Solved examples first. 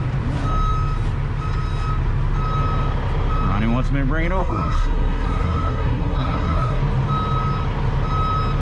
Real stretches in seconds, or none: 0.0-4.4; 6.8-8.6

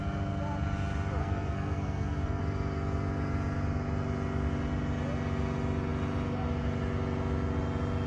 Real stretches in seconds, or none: 0.0-1.2; 2.4-8.1

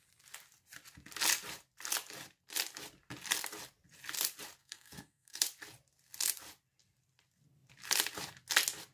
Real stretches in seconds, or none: 0.0-4.6; 5.4-8.9